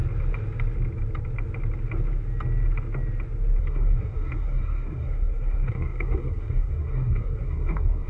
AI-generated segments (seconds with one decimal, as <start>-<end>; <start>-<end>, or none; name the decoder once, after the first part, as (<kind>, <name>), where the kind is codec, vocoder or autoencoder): 3.6-8.1 (codec, SNAC)